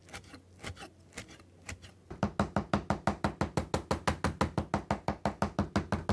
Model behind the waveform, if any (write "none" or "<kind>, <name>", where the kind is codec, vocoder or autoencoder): none